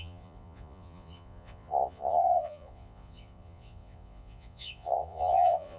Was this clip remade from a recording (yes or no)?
yes